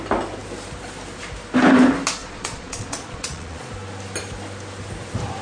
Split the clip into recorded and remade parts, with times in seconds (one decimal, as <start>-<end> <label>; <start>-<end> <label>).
0.0-2.2 recorded; 2.2-3.7 remade; 3.7-5.4 recorded

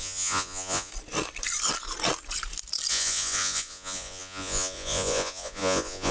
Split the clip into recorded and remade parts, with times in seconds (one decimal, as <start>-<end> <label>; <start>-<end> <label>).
0.0-0.9 remade; 0.9-2.9 recorded; 2.9-6.1 remade

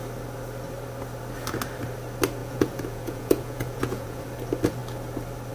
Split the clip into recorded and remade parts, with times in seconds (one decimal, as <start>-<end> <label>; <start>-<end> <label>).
0.0-2.4 recorded; 2.4-4.2 remade; 4.2-5.5 recorded